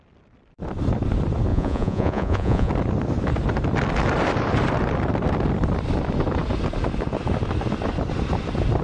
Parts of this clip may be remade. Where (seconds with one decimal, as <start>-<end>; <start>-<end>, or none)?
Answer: 1.5-2.7